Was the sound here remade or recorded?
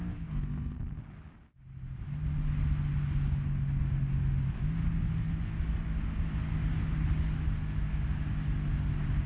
recorded